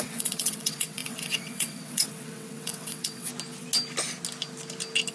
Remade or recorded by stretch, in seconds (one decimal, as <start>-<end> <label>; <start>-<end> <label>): 0.0-3.3 remade; 3.3-5.1 recorded